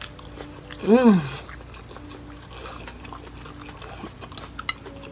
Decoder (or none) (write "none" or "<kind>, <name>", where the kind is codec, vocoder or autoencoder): none